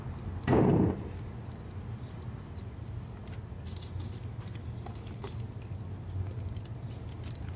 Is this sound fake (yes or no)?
no